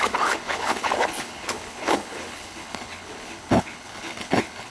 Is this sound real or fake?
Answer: fake